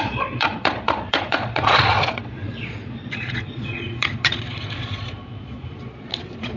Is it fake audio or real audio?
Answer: fake